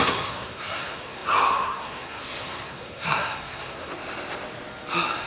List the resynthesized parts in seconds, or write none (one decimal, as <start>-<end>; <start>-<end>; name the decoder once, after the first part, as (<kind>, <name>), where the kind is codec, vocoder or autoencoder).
0.0-3.9 (codec, SNAC)